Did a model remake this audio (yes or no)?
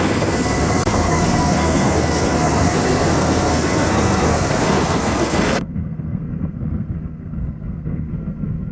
yes